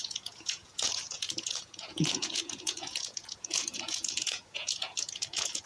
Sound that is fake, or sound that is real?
fake